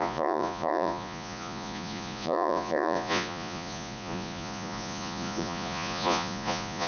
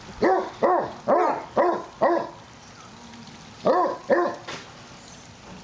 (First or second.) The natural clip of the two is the second